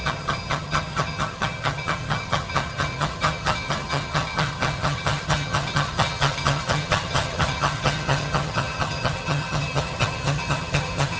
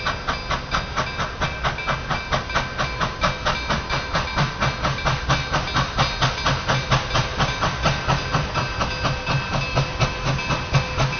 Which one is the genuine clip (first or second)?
second